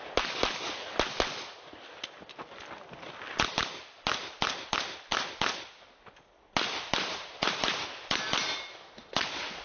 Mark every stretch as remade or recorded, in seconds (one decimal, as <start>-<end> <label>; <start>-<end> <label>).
0.0-9.6 recorded